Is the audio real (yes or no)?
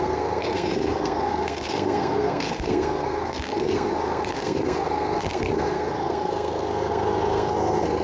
no